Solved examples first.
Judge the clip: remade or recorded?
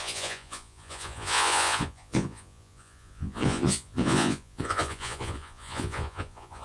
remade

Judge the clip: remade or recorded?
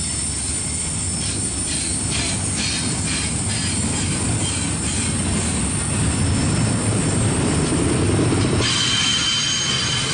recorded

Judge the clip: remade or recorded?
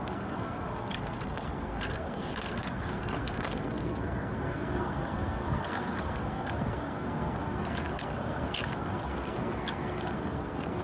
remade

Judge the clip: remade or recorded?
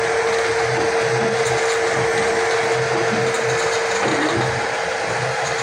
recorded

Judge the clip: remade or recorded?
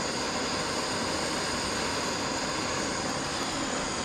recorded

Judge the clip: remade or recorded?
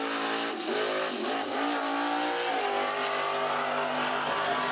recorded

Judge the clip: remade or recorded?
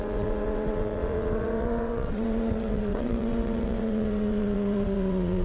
remade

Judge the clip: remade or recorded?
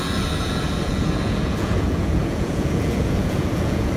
remade